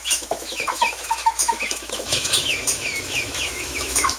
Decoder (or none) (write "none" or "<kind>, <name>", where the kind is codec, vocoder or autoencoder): autoencoder, DAC-VAE